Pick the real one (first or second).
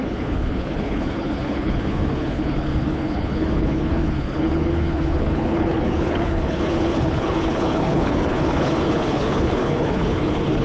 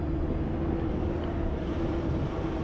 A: second